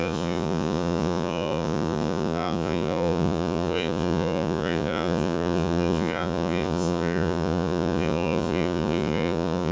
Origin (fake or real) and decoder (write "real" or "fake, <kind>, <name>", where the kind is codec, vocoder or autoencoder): fake, vocoder, Vocos